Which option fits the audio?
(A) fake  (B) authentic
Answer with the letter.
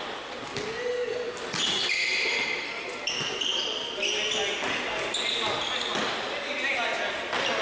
B